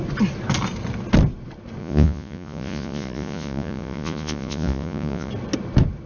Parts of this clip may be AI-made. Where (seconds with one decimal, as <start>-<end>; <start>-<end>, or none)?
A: 1.8-5.3